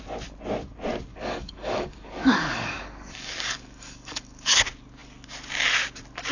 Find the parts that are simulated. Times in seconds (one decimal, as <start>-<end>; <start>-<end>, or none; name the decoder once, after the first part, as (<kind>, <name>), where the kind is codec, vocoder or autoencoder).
1.1-4.6 (codec, DAC)